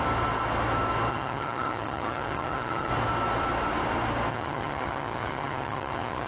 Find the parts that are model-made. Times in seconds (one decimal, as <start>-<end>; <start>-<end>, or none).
1.1-2.9; 4.3-6.3